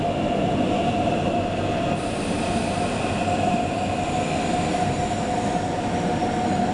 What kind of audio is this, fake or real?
real